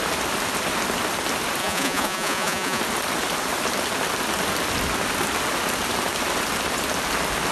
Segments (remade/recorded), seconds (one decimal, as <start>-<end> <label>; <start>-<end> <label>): 0.0-1.6 recorded; 1.6-2.8 remade; 2.8-7.5 recorded